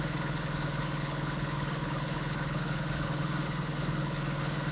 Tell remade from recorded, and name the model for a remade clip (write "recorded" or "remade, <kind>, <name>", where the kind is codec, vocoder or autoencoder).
remade, codec, HILCodec